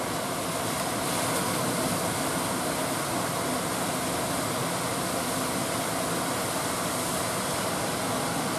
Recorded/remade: recorded